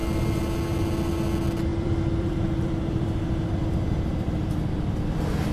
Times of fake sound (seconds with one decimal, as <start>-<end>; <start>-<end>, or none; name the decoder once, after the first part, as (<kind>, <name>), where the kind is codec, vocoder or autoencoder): 1.7-4.9 (vocoder, BigVGAN v2)